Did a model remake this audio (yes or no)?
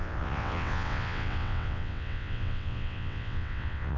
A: yes